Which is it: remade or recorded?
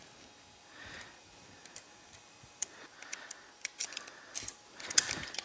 remade